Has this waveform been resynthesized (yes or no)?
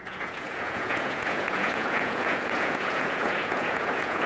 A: yes